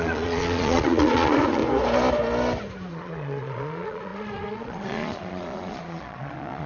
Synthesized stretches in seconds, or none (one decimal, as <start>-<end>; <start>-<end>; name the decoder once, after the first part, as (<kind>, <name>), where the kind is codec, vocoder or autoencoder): 0.0-1.6 (vocoder, Vocos); 2.9-6.7